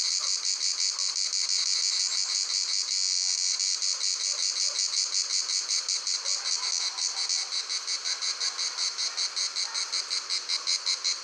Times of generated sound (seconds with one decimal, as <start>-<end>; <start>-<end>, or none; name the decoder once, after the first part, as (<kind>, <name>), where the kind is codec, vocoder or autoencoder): none